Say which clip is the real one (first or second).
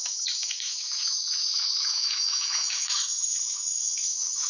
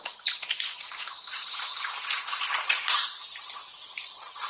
second